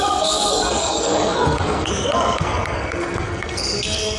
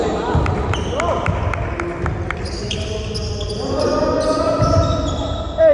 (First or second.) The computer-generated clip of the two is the first